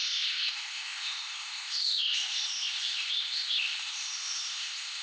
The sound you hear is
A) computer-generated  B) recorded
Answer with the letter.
A